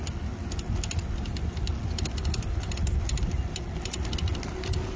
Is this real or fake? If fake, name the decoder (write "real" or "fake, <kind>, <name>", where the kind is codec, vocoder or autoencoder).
real